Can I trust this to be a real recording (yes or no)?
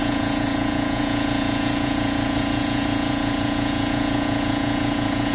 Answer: no